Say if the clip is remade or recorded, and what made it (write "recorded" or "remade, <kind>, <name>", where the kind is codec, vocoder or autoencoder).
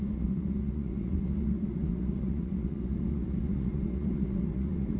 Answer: remade, vocoder, Vocos